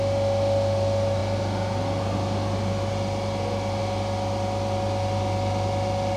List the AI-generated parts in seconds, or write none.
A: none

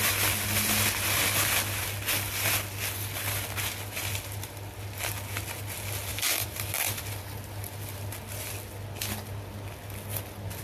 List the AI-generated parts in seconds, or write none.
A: 6.1-7.0

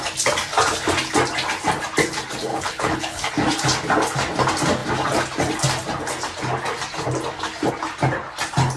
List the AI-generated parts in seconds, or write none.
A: 2.5-3.3

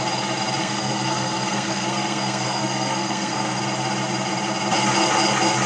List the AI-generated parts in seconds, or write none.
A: 0.6-3.6

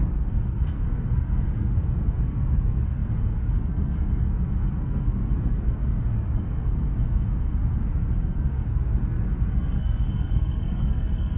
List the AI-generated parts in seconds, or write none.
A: 0.0-11.4